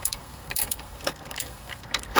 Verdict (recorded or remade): remade